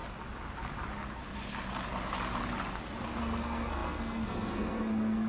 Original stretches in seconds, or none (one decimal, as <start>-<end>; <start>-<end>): 0.0-3.2